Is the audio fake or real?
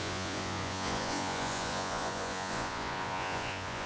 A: fake